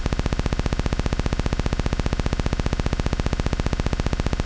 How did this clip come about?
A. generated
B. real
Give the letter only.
B